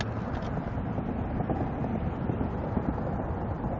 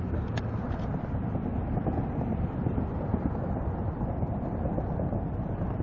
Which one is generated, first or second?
second